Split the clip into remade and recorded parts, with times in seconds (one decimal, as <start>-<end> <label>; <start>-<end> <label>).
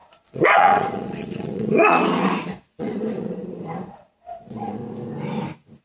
0.0-4.8 remade; 4.8-5.8 recorded